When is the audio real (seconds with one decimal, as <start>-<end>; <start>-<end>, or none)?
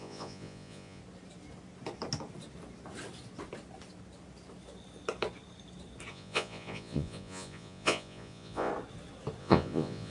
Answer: 1.0-6.1; 8.7-9.4